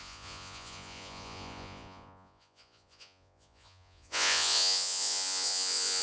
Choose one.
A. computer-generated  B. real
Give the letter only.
A